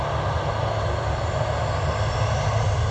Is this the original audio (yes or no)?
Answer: yes